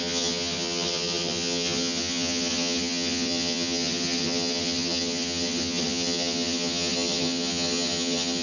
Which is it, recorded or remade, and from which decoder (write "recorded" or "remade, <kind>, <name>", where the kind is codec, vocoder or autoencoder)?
remade, vocoder, HiFi-GAN